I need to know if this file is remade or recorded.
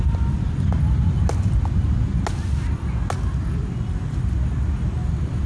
recorded